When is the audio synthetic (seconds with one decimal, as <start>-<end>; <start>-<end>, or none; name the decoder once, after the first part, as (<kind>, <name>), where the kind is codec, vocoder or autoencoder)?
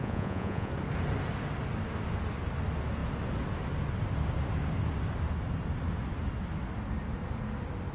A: 0.0-0.7 (vocoder, Vocos)